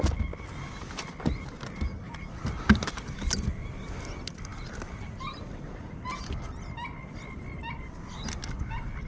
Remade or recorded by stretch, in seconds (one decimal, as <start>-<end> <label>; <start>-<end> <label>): 0.0-9.1 recorded